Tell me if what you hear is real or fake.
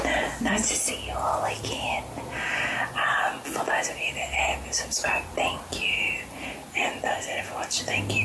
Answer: real